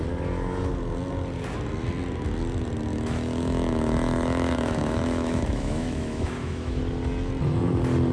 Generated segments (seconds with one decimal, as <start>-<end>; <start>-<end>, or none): 2.9-6.8